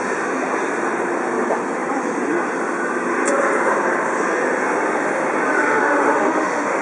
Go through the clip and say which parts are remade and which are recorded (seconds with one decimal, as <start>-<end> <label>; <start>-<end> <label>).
0.0-5.6 recorded; 5.6-6.8 remade